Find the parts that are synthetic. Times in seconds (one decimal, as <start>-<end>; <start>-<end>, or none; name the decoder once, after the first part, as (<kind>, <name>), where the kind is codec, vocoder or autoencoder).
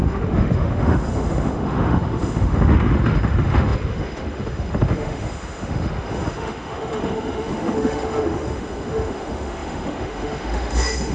0.0-11.1 (autoencoder, DAC-VAE)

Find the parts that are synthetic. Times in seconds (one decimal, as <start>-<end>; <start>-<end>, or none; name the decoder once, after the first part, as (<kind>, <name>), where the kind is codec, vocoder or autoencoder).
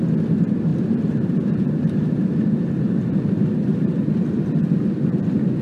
0.7-4.1 (vocoder, BigVGAN v2)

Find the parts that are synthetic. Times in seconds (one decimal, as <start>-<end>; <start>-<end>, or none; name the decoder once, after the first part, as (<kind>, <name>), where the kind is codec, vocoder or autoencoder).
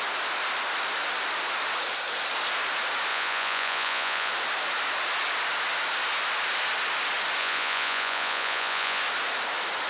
3.1-4.3 (vocoder, Vocos); 7.4-9.0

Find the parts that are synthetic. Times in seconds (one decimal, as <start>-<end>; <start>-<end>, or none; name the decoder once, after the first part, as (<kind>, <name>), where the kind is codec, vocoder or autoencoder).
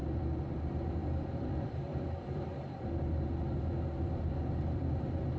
0.0-0.6 (vocoder, BigVGAN v2); 1.0-2.8